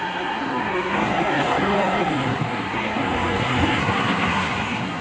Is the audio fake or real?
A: fake